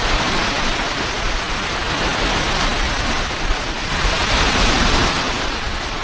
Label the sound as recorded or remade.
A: recorded